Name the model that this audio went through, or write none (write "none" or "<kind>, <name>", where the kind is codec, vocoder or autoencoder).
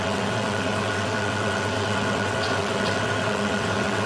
vocoder, WaveNeXt